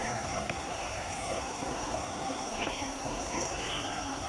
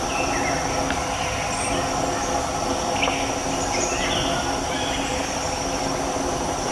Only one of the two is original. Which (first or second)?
second